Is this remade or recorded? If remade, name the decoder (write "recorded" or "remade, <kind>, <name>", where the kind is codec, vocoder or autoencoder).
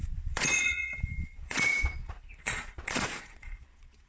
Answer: remade, vocoder, Vocos